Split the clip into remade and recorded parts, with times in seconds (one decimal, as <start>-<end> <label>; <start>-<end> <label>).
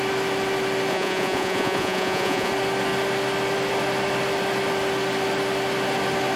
0.0-0.9 recorded; 0.9-2.5 remade; 2.5-6.4 recorded